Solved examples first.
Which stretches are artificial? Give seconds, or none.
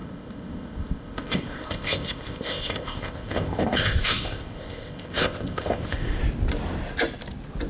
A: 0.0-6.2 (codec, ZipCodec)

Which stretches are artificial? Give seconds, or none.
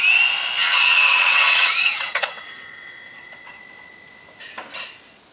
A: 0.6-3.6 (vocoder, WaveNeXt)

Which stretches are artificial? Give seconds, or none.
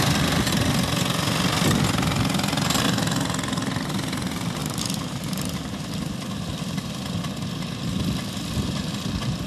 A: none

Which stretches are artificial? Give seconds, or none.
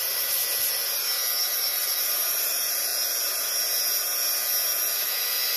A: 0.0-0.4 (vocoder, BigVGAN v2); 1.4-2.9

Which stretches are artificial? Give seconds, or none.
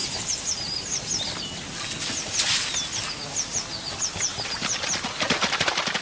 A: 0.0-1.6 (vocoder, BigVGAN v2); 4.3-4.8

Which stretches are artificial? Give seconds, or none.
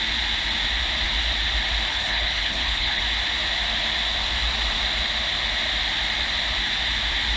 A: 1.9-3.0 (codec, HILCodec)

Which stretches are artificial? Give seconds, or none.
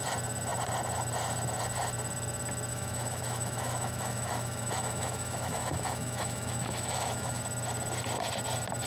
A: 2.7-7.4 (autoencoder, DAC-VAE)